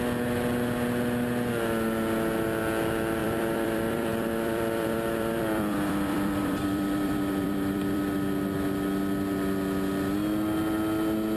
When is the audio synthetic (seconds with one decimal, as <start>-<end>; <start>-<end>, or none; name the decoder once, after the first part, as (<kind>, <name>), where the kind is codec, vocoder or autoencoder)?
3.2-8.0 (vocoder, BigVGAN v2)